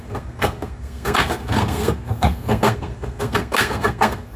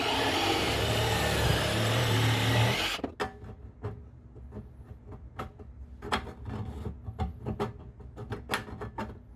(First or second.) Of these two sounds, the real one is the second